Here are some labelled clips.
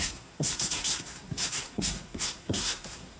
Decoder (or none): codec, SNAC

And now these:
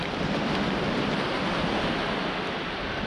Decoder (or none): none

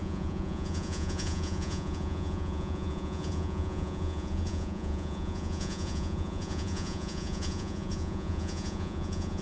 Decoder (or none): vocoder, Vocos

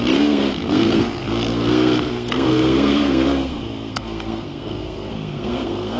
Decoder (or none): codec, SNAC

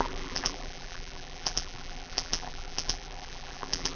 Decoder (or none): vocoder, BigVGAN v2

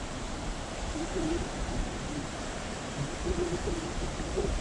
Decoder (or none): vocoder, BigVGAN v2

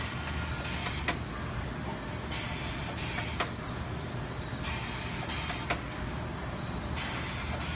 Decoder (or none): none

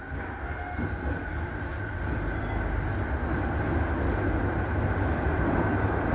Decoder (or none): none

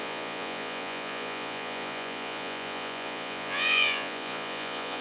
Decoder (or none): vocoder, Vocos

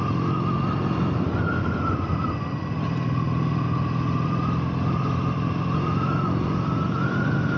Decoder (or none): none